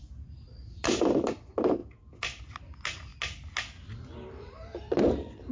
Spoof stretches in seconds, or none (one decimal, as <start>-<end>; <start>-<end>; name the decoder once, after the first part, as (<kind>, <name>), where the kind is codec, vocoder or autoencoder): none